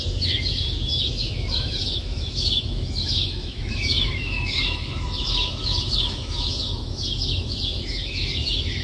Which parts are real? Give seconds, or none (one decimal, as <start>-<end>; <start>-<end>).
none